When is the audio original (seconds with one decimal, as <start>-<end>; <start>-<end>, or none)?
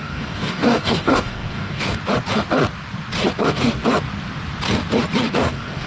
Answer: 2.0-3.4; 3.8-5.3